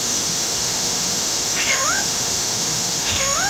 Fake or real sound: fake